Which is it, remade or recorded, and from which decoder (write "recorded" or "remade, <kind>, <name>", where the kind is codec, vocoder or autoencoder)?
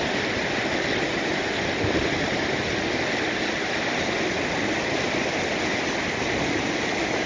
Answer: recorded